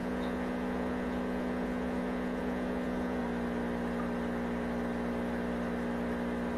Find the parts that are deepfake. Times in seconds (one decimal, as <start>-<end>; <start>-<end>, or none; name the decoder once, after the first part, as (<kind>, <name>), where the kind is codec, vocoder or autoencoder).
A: 0.0-3.2 (vocoder, Vocos)